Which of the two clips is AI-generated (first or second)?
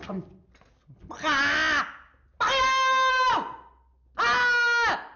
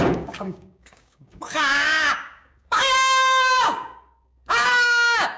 second